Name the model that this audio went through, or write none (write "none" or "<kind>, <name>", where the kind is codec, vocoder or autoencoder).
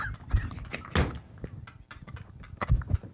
none